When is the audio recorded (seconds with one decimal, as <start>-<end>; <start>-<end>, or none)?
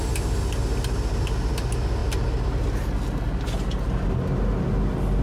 0.0-5.2